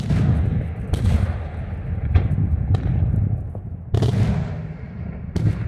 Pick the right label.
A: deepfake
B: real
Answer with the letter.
B